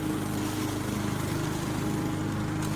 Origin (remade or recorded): recorded